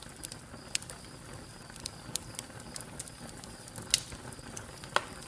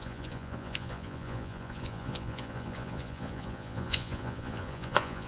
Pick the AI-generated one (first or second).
second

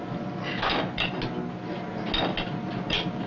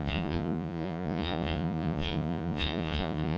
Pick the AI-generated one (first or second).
second